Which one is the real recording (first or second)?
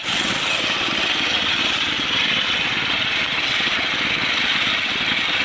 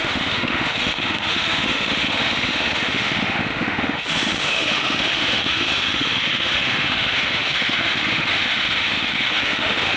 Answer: first